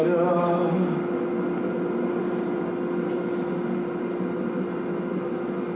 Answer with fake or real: real